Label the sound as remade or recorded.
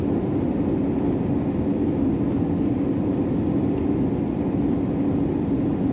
recorded